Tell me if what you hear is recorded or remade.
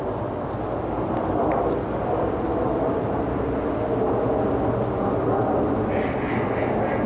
recorded